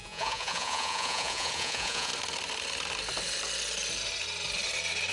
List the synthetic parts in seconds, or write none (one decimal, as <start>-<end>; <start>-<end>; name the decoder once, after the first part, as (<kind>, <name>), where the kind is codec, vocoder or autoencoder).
0.0-2.1 (vocoder, Vocos)